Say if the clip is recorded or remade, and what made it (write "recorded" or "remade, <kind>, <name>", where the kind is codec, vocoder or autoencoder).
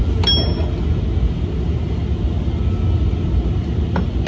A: recorded